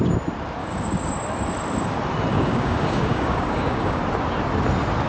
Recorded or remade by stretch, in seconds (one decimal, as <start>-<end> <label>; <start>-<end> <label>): 0.0-0.6 recorded; 0.6-1.1 remade; 1.1-2.3 recorded; 2.3-4.0 remade; 4.0-5.1 recorded